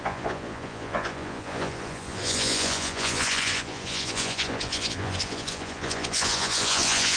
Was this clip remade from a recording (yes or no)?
yes